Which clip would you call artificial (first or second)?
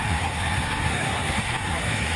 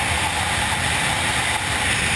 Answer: first